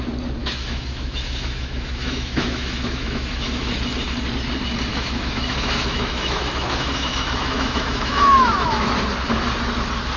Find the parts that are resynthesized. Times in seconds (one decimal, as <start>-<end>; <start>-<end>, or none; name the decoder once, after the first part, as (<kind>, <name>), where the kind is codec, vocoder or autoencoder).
0.4-3.7 (autoencoder, DAC-VAE); 4.9-8.9